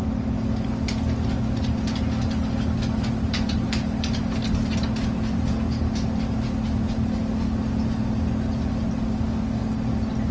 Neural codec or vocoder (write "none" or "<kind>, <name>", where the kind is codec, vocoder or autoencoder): none